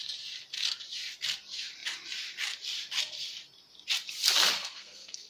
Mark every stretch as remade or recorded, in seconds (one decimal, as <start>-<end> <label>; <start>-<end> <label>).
0.0-4.6 recorded; 4.6-5.3 remade

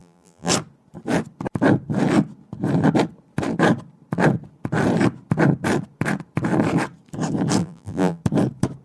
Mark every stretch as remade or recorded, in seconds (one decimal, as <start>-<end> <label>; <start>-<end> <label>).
0.0-0.5 remade; 0.5-7.6 recorded; 7.6-8.2 remade; 8.2-8.8 recorded

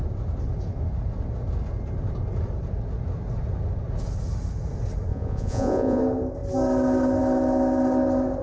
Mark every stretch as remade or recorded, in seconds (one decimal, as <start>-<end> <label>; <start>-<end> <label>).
0.0-5.1 recorded; 5.1-6.0 remade; 6.0-8.4 recorded

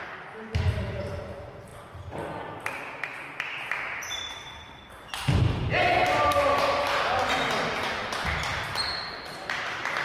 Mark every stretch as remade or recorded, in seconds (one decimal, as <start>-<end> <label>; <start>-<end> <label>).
0.0-10.0 recorded

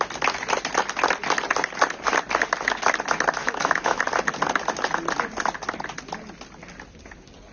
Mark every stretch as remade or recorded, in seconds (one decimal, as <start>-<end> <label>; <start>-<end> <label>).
0.0-3.4 recorded; 3.4-4.0 remade; 4.0-7.5 recorded

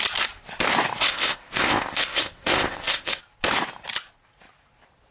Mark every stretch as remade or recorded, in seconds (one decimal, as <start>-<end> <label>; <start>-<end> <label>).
0.0-1.0 recorded; 1.0-3.2 remade; 3.2-5.1 recorded